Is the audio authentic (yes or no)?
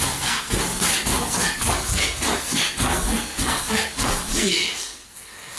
no